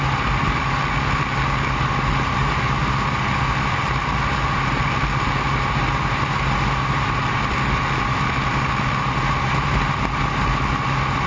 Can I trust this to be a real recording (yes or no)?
yes